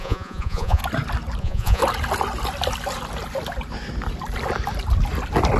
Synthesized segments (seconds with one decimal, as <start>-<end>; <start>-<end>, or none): 0.0-0.8; 1.4-1.8